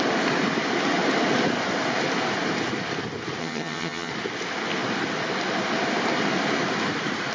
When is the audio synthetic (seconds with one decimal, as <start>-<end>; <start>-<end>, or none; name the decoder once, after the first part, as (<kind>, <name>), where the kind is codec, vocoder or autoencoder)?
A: 3.4-4.1 (vocoder, HiFi-GAN)